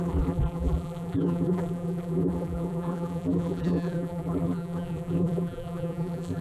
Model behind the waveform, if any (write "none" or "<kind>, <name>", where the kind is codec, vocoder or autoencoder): vocoder, BigVGAN v2